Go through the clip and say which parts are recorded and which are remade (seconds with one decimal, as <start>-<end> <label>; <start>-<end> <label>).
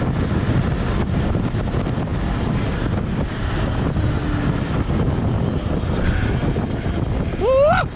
0.0-8.0 recorded